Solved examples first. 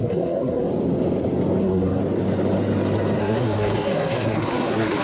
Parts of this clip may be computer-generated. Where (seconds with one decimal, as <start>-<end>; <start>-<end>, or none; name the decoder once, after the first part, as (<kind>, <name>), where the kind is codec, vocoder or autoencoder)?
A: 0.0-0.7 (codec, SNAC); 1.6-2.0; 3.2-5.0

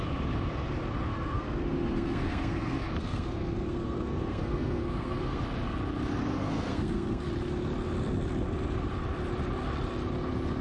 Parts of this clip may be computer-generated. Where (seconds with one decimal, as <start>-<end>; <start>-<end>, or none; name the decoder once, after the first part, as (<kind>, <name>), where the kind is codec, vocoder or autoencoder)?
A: 1.1-5.4 (codec, SNAC); 6.3-7.3

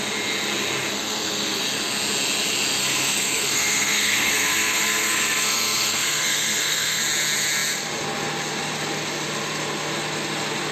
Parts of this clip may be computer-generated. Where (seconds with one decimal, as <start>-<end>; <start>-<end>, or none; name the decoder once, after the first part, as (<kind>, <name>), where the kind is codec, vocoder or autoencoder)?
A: 0.9-1.6 (codec, SNAC); 2.8-7.0

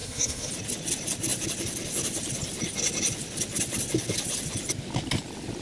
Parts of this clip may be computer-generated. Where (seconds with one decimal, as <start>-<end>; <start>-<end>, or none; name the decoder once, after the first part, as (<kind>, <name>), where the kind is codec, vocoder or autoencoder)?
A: 0.0-0.5 (codec, SNAC)

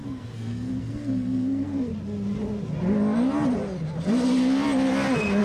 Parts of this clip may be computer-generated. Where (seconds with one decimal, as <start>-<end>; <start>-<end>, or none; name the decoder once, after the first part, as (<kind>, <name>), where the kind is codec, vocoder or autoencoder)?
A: 0.0-1.9 (codec, SNAC)